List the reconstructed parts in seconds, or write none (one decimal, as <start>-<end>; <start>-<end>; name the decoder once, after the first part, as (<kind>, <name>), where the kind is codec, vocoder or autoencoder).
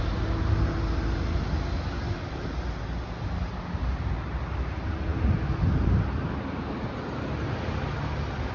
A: none